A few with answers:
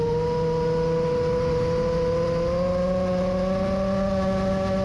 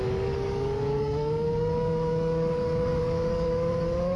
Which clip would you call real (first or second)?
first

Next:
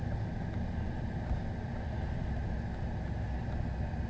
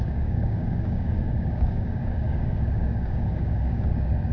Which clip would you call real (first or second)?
first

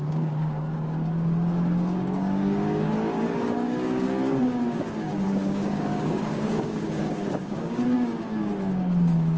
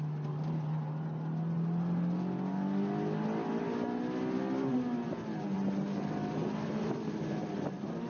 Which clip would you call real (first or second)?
second